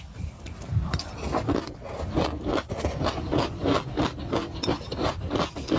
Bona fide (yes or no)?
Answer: yes